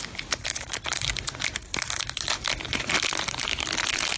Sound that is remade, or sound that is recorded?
recorded